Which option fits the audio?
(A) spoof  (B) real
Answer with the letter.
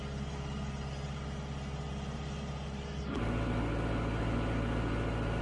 B